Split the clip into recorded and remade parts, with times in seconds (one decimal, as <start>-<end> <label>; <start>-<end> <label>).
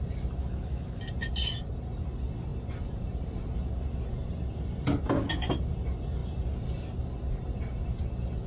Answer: 0.0-0.4 recorded; 0.4-1.0 remade; 1.0-8.5 recorded